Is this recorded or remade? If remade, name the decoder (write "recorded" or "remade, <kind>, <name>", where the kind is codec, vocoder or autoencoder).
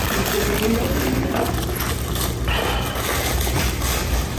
recorded